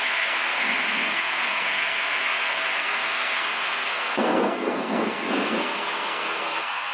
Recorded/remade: remade